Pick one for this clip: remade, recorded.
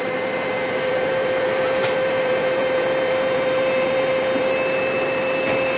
remade